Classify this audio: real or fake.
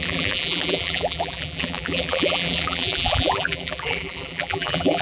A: fake